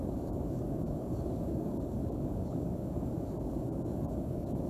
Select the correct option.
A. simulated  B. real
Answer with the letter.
A